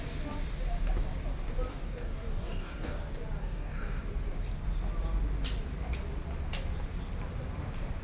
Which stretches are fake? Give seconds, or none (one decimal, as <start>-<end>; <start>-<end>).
1.7-3.0; 3.4-4.0